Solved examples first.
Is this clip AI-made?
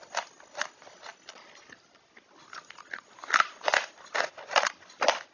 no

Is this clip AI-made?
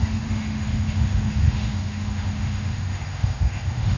yes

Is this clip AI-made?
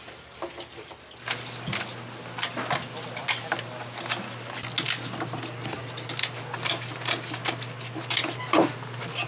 no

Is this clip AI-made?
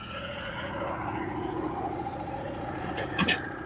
yes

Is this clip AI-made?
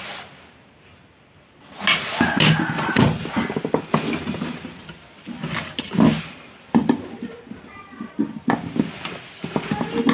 no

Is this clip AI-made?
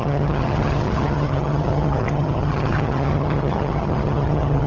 yes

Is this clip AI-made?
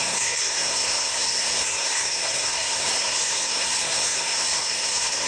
yes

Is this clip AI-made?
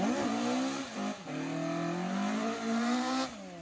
no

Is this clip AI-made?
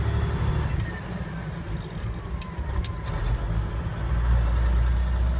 no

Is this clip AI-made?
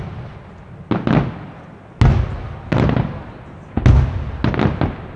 no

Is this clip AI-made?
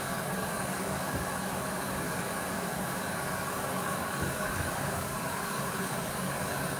yes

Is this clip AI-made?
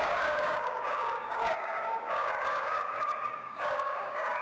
yes